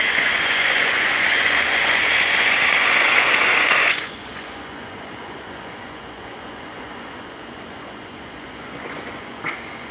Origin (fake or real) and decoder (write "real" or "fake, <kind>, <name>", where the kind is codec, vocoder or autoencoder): fake, vocoder, Vocos